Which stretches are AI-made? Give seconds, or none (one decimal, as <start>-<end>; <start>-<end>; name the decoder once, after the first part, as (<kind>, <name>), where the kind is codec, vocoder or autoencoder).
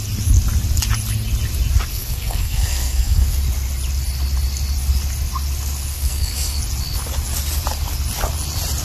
1.9-3.4 (codec, SNAC); 5.9-6.6